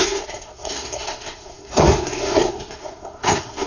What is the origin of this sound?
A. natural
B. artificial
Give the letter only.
B